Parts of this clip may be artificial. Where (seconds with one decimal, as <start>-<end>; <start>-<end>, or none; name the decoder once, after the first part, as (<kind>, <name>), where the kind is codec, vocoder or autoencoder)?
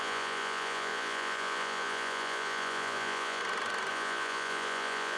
0.0-3.4 (vocoder, Vocos); 3.9-5.2